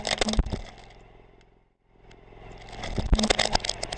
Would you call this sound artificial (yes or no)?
no